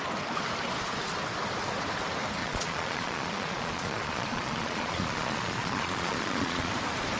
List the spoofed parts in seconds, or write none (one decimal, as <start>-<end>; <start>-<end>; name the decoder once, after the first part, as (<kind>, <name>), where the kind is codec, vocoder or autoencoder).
2.4-6.7 (vocoder, Vocos)